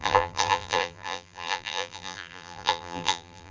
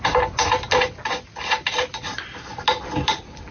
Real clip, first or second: second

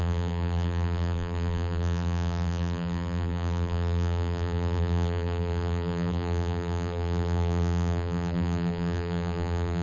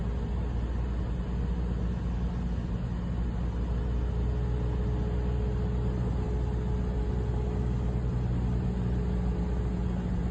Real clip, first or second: second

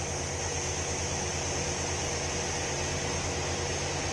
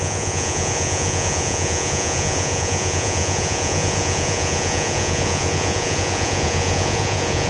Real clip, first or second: first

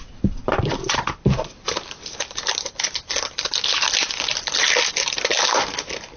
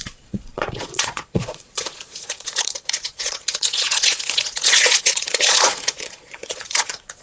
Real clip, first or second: first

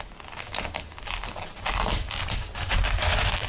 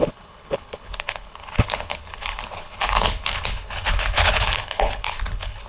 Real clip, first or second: first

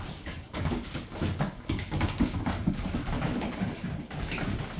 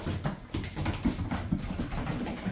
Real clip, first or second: second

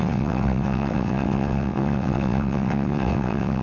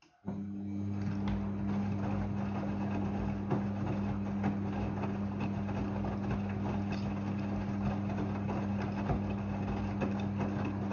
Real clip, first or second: second